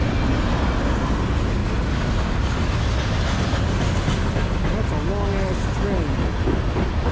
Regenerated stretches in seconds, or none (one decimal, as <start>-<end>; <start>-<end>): none